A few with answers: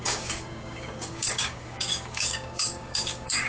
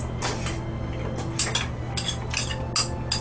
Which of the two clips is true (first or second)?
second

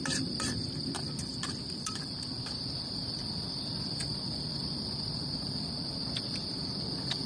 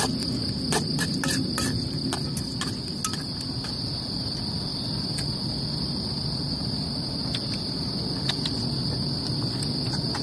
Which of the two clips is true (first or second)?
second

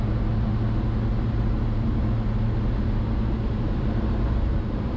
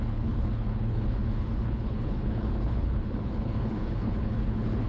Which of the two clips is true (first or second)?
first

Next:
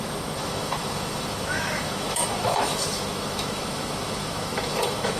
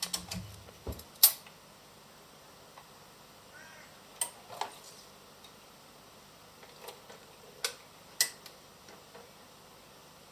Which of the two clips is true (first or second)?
second